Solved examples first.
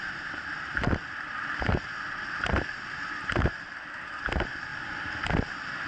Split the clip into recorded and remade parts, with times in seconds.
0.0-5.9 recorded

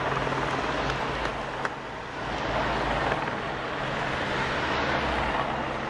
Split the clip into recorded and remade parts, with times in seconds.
0.0-5.9 recorded

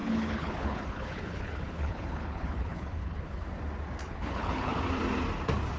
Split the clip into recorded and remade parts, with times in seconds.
0.0-3.5 remade; 3.5-4.0 recorded; 4.0-4.8 remade; 4.8-5.8 recorded

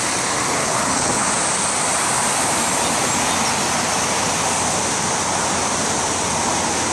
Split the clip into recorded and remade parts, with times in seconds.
0.0-0.6 recorded; 0.6-1.3 remade; 1.3-6.9 recorded

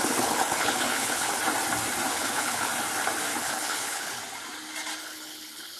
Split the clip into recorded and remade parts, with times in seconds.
0.0-1.4 remade; 1.4-2.1 recorded; 2.1-2.7 remade; 2.7-3.4 recorded; 3.4-4.2 remade; 4.2-5.0 recorded; 5.0-5.8 remade

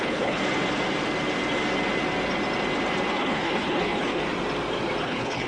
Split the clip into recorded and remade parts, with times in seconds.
0.0-0.4 remade; 0.4-3.1 recorded; 3.1-4.2 remade; 4.2-5.0 recorded; 5.0-5.5 remade

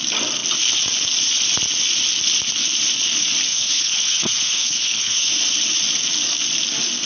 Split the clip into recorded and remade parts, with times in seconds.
0.0-3.5 recorded; 3.5-5.3 remade; 5.3-7.1 recorded